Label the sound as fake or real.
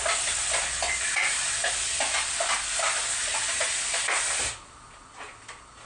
real